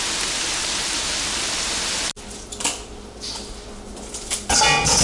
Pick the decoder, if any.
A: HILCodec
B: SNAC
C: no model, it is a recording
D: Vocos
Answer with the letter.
C